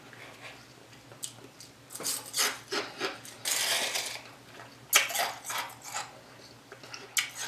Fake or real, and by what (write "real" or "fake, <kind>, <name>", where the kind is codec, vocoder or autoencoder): real